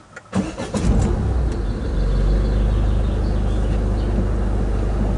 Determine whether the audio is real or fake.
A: real